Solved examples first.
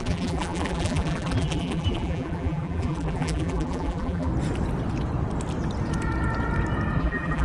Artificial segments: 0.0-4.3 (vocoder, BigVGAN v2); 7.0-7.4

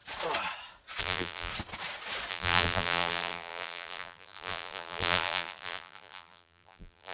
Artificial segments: 1.0-1.5 (vocoder, BigVGAN v2); 2.3-7.1

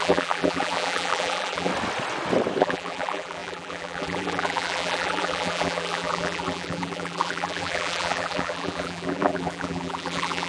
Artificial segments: 0.0-1.7 (vocoder, BigVGAN v2); 2.6-10.5

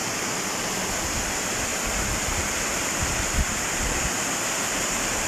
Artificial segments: 0.0-0.7 (vocoder, BigVGAN v2); 1.7-5.3

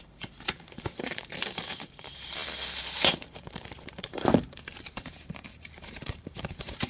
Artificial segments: 0.0-6.9 (vocoder, BigVGAN v2)

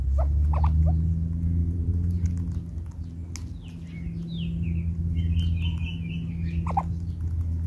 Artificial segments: 1.6-2.3 (vocoder, BigVGAN v2)

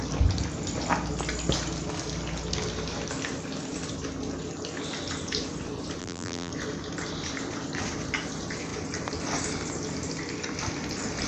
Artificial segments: 6.0-6.5 (vocoder, BigVGAN v2)